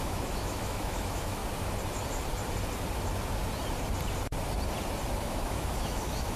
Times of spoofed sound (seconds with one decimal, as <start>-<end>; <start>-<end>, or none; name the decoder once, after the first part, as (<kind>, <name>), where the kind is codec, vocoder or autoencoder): 0.0-1.4 (autoencoder, DAC-VAE); 5.2-6.4